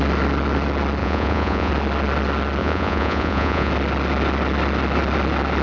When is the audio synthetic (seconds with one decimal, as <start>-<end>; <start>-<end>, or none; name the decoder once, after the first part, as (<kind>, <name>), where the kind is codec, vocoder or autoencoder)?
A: 1.0-1.7 (vocoder, Vocos); 2.6-3.7